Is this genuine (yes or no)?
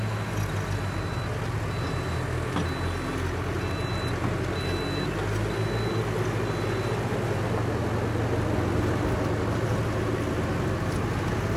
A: yes